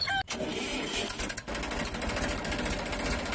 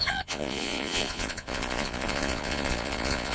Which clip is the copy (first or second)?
second